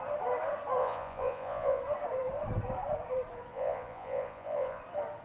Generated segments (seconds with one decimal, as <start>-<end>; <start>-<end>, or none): 0.8-1.8; 3.5-4.8